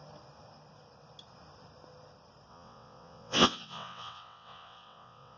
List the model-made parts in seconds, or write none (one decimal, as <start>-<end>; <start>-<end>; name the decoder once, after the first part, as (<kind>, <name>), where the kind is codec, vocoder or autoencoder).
2.5-5.4 (vocoder, WaveNeXt)